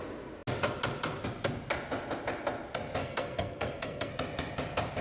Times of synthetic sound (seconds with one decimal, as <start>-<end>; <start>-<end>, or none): 3.0-4.1